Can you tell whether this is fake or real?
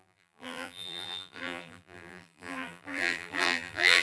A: fake